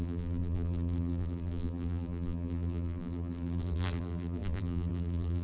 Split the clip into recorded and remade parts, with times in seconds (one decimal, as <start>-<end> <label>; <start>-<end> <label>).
0.0-5.4 remade